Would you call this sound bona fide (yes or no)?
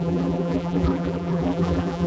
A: no